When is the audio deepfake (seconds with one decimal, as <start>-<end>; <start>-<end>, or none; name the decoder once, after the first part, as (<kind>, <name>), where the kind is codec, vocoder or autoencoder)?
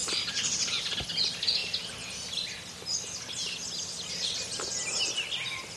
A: none